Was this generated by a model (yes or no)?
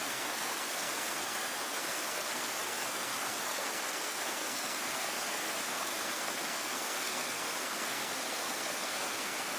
yes